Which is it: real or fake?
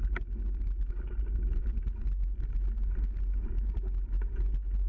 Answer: real